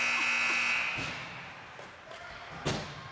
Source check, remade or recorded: recorded